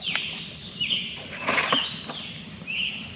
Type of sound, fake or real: fake